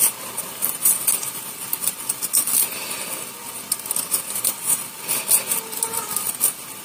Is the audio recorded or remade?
recorded